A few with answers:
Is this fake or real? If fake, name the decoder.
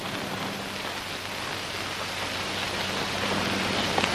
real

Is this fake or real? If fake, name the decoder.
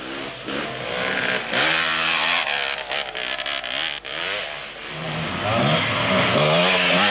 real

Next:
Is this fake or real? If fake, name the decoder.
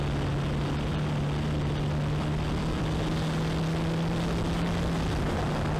real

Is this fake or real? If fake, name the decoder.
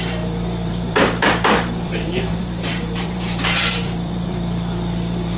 fake, vocoder, BigVGAN v2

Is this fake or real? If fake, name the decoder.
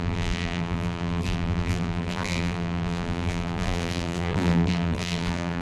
fake, vocoder, BigVGAN v2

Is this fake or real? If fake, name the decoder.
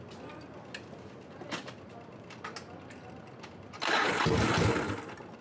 real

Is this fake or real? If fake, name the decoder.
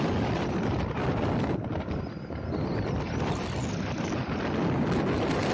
real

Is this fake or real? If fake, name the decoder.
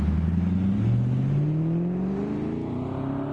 real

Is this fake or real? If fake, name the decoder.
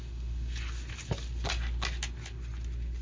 real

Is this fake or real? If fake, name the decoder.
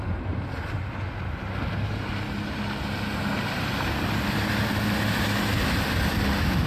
real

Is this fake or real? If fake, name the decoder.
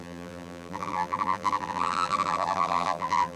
fake, vocoder, BigVGAN v2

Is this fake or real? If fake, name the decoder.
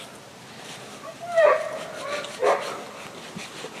real